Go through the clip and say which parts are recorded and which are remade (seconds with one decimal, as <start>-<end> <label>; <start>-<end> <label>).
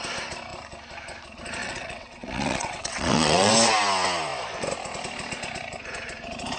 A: 0.0-1.6 recorded; 1.6-3.5 remade; 3.5-6.6 recorded